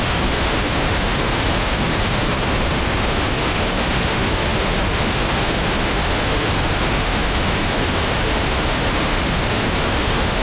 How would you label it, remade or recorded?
remade